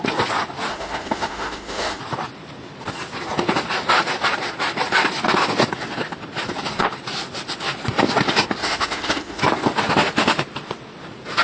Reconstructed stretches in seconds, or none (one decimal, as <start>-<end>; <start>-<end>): 0.7-2.0; 8.6-9.4